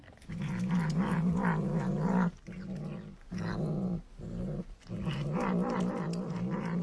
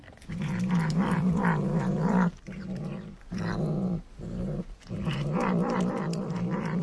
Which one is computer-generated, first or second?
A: second